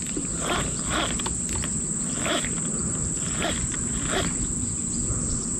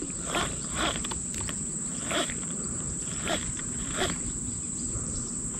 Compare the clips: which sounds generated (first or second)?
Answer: second